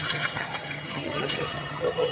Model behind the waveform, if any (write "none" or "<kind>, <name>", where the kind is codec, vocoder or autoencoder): vocoder, HiFi-GAN